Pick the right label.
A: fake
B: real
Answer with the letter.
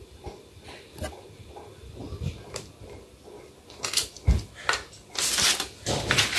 B